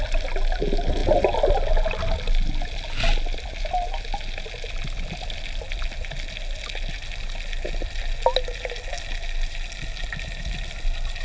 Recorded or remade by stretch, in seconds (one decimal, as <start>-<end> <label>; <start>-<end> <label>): 0.0-11.2 recorded

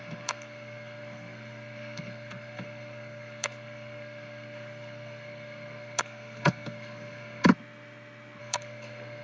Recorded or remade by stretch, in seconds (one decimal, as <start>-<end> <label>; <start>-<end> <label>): 0.0-7.5 remade; 7.5-8.4 recorded; 8.4-9.2 remade

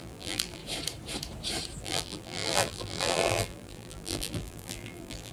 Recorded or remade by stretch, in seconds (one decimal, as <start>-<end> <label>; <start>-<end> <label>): 0.0-0.6 remade; 0.6-1.8 recorded; 1.8-5.3 remade

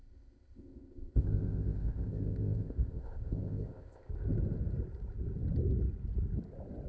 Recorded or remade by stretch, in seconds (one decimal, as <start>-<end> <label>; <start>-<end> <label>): 0.0-4.1 remade; 4.1-6.9 recorded